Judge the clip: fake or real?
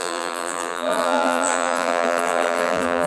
fake